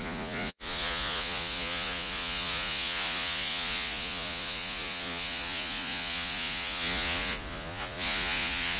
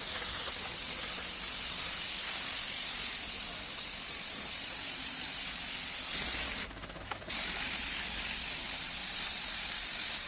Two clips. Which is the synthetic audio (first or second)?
first